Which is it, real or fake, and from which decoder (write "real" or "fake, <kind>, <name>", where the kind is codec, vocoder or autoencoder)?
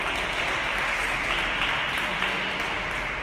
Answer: real